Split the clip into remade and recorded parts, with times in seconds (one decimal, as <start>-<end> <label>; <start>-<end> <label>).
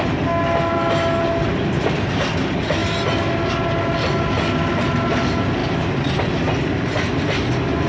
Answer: 0.0-7.9 recorded